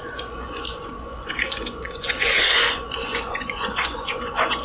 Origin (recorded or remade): remade